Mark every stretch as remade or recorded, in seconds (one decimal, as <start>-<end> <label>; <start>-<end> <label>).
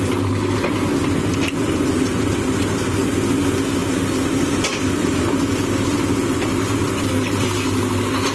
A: 0.0-8.3 recorded